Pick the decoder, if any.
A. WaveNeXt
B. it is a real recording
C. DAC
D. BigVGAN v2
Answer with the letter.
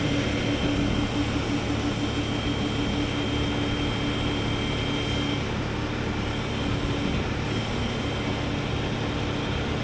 B